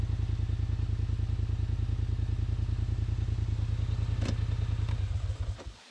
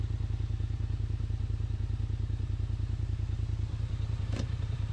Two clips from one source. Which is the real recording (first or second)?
first